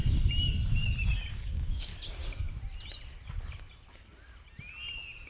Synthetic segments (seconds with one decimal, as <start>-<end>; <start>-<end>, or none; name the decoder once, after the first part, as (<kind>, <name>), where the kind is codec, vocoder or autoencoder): 1.3-1.9 (codec, DAC)